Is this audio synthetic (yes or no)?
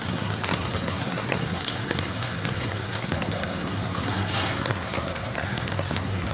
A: yes